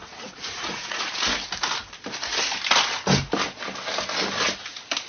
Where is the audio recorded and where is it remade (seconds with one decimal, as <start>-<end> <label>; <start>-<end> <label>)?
0.0-1.2 remade; 1.2-5.1 recorded